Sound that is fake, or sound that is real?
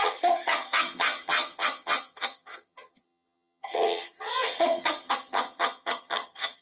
fake